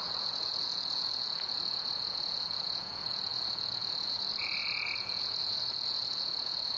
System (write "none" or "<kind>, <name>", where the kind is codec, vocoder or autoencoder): vocoder, Vocos